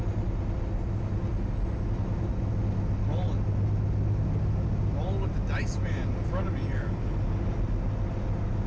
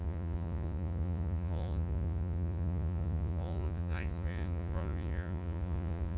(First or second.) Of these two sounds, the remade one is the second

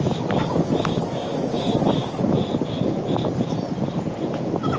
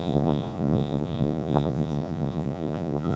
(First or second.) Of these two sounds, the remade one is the second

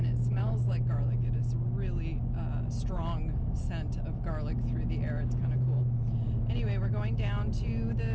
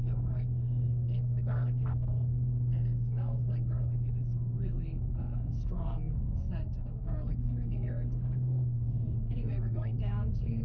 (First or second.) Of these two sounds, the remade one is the second